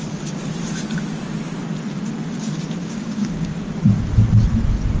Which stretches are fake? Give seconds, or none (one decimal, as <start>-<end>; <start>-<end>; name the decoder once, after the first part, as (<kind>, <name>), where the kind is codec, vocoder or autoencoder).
2.8-3.5 (codec, DAC)